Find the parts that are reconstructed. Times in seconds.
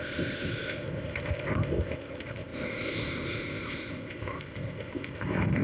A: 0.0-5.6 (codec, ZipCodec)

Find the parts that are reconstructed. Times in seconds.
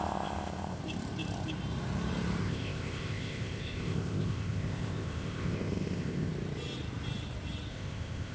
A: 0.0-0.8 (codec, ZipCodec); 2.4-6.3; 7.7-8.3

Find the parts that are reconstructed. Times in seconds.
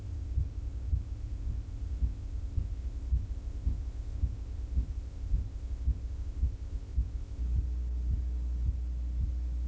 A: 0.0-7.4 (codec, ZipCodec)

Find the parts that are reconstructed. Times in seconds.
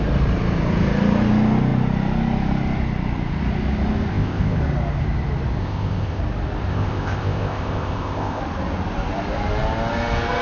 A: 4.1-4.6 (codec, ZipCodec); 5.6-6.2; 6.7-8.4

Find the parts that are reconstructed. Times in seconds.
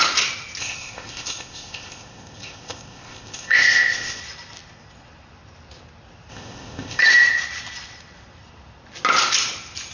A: 0.6-4.2 (codec, ZipCodec); 6.3-7.0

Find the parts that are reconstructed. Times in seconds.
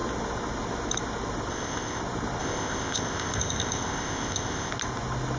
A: 1.5-2.0 (codec, ZipCodec); 2.4-4.7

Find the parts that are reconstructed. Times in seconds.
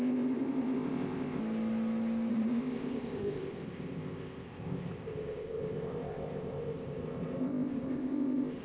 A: 0.0-1.4 (codec, ZipCodec); 2.3-8.6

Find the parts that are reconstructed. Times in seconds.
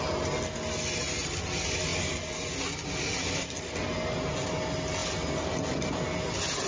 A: none